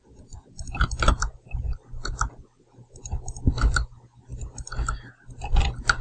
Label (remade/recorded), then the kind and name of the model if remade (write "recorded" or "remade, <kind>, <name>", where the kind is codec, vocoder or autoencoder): recorded